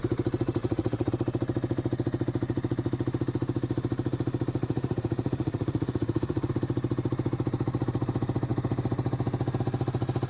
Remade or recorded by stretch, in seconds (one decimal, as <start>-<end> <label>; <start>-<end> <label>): 0.0-0.6 recorded; 0.6-1.1 remade; 1.1-4.6 recorded; 4.6-6.5 remade; 6.5-10.3 recorded